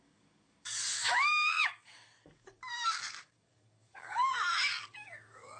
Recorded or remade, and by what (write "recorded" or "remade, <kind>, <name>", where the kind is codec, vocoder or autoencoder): remade, codec, DAC